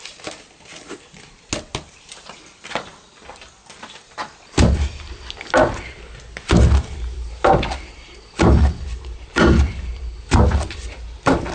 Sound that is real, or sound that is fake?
real